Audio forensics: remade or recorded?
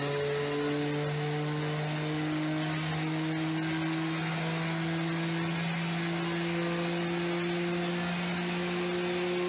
recorded